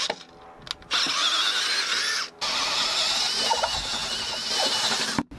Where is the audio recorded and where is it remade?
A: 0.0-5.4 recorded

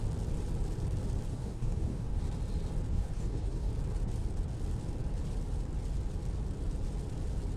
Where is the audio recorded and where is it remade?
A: 0.0-1.3 recorded; 1.3-2.2 remade; 2.2-2.9 recorded; 2.9-3.7 remade; 3.7-7.6 recorded

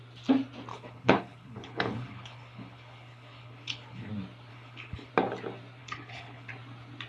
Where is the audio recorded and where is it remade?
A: 0.0-0.7 recorded; 0.7-4.1 remade; 4.1-4.5 recorded; 4.5-5.1 remade; 5.1-5.8 recorded; 5.8-6.5 remade; 6.5-7.1 recorded

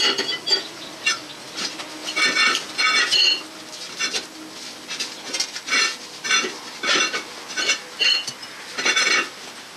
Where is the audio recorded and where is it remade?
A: 0.0-9.8 recorded

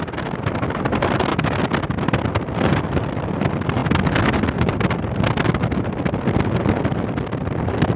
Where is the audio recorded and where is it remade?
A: 0.0-8.0 recorded

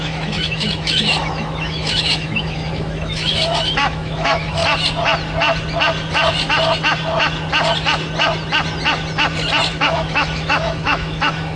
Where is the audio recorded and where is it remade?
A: 0.0-4.6 remade; 4.6-9.7 recorded; 9.7-11.6 remade